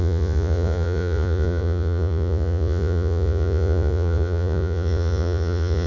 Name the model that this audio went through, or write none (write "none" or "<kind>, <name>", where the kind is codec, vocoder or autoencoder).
vocoder, Vocos